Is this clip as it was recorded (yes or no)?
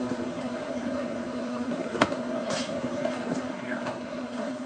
no